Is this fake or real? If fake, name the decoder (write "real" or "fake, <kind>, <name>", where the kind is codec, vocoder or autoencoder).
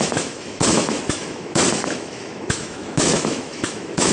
fake, autoencoder, DAC-VAE